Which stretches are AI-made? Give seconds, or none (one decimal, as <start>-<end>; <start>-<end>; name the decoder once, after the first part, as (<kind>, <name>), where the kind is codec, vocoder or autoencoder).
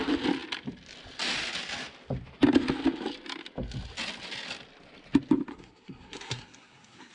5.5-7.1 (codec, SNAC)